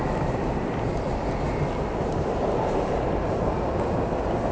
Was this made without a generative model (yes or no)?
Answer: yes